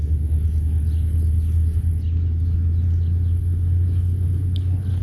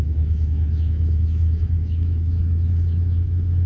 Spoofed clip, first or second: second